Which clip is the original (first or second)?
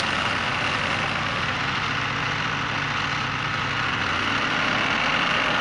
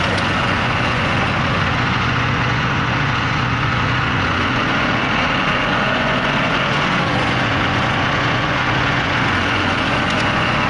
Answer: first